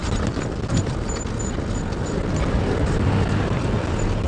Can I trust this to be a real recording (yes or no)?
yes